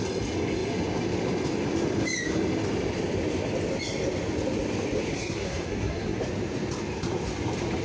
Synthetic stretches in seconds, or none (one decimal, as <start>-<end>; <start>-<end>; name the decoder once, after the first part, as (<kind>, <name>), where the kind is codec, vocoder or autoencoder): 5.1-6.2 (codec, SNAC)